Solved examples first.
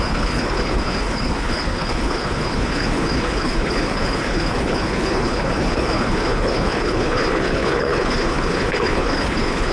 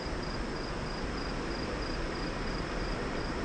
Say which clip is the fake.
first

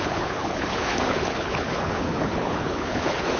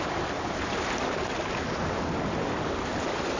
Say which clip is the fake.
first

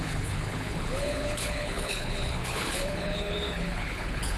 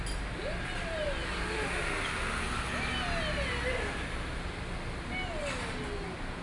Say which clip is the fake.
first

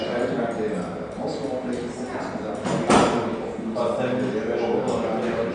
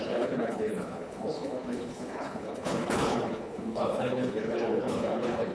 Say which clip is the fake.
second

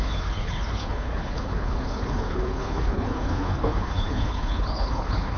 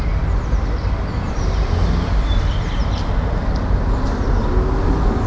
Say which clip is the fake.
first